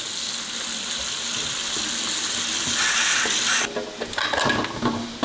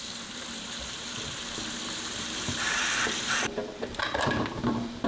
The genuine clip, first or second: first